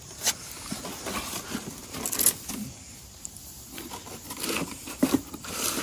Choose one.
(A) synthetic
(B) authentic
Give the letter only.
B